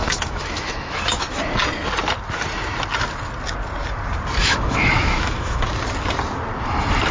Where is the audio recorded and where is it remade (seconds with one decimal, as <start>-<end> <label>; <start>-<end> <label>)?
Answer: 0.0-1.4 remade; 1.4-4.4 recorded; 4.4-5.7 remade; 5.7-7.1 recorded